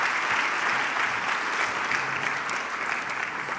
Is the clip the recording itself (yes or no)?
yes